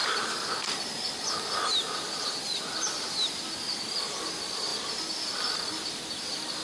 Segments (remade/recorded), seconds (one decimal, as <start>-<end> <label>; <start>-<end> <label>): 0.0-3.4 remade; 3.4-4.7 recorded; 4.7-6.0 remade; 6.0-6.6 recorded